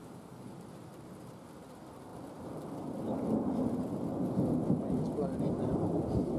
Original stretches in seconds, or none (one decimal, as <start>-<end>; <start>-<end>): 0.5-6.4